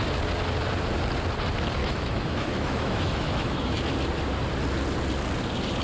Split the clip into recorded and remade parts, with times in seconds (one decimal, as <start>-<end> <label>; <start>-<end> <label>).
0.0-1.8 recorded; 1.8-3.8 remade; 3.8-5.8 recorded